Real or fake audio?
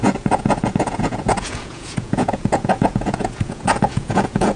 fake